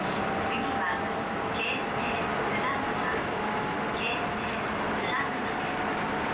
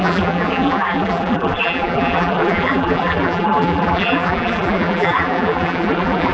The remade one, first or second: second